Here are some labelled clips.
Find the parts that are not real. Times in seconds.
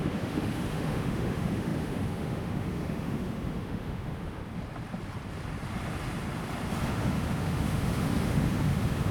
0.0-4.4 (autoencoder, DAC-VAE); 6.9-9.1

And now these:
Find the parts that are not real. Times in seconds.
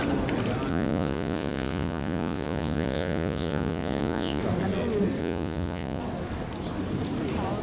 0.7-4.4 (vocoder, Vocos); 5.2-6.0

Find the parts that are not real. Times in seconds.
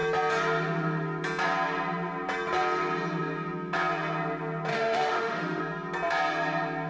4.7-5.6 (autoencoder, DAC-VAE)